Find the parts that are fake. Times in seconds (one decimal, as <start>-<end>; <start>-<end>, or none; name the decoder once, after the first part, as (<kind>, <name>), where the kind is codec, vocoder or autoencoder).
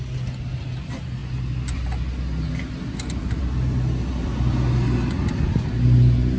none